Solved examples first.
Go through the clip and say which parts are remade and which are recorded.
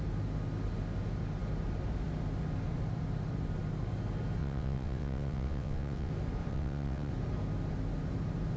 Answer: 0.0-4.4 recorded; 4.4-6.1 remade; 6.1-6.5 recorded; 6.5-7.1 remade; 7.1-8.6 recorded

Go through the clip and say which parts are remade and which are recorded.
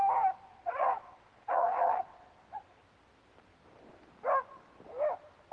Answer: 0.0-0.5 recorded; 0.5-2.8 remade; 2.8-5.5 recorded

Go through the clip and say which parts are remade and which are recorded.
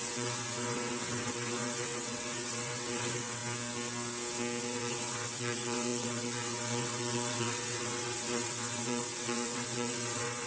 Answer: 0.0-3.4 remade; 3.4-4.6 recorded; 4.6-10.5 remade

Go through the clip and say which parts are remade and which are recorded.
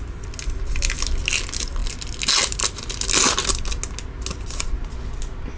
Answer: 0.0-5.6 recorded